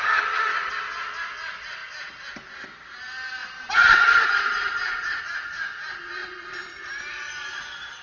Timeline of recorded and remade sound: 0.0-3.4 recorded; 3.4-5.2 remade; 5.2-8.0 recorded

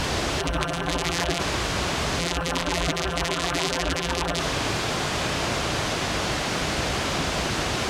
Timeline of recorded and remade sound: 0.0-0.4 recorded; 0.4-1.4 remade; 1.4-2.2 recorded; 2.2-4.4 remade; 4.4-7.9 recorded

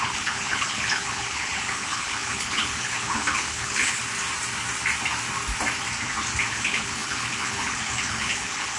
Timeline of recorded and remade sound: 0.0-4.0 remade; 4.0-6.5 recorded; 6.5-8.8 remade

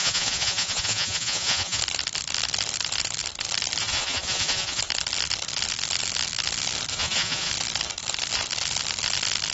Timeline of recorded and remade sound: 0.0-1.8 remade; 1.8-3.8 recorded; 3.8-4.8 remade; 4.8-6.9 recorded; 6.9-7.5 remade; 7.5-9.5 recorded